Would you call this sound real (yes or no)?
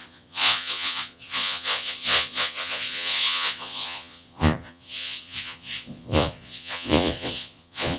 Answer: no